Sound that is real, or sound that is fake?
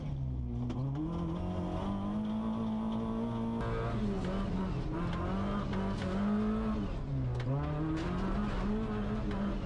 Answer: real